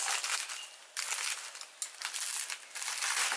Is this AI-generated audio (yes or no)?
no